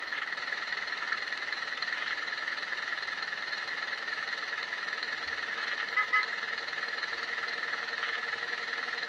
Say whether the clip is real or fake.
fake